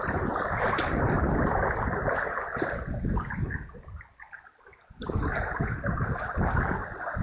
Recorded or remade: recorded